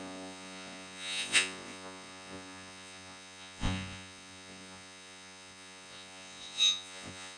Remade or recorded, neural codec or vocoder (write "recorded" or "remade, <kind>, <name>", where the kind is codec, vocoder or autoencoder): remade, vocoder, Vocos